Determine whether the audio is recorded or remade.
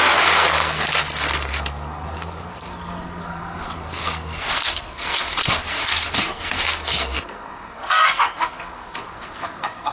remade